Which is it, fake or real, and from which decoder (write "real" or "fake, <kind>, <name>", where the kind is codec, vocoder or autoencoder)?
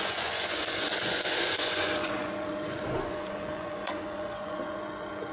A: fake, vocoder, Vocos